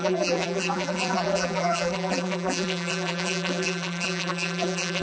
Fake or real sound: fake